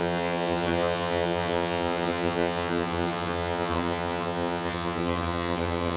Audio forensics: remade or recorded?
remade